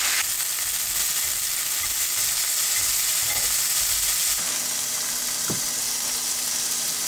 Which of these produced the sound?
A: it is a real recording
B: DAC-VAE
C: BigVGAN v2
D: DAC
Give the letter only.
A